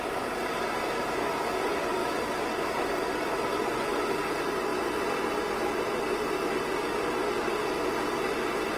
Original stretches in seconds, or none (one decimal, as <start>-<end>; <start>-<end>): 0.0-2.0; 3.7-8.8